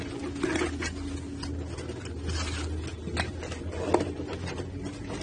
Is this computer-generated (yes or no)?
no